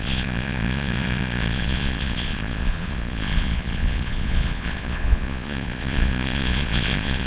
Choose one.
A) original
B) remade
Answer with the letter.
B